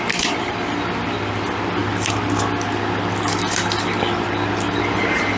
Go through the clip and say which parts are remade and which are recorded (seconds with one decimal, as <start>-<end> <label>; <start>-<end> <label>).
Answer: 0.0-5.4 recorded